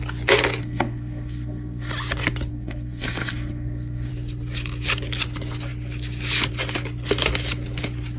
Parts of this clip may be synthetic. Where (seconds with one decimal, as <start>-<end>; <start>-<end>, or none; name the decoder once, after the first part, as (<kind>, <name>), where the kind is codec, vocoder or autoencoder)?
0.6-1.9 (codec, SNAC); 2.5-4.1